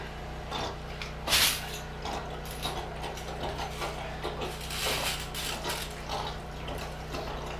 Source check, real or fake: real